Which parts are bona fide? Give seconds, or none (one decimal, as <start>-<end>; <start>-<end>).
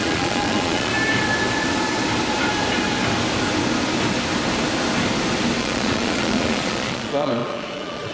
0.9-5.6